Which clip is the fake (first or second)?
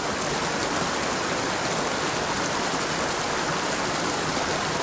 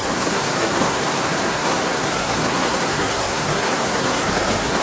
second